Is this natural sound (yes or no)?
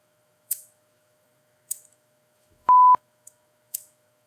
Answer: no